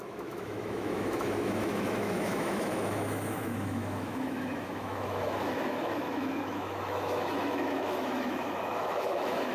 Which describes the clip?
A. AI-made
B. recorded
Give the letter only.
A